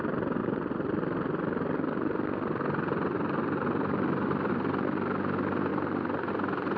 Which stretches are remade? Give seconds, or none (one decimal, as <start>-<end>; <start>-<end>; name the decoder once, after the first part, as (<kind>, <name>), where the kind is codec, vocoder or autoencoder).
none